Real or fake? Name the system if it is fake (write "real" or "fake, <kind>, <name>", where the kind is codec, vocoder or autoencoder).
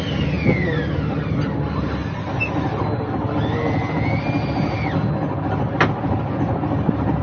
real